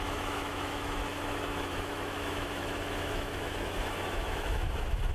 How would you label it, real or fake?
fake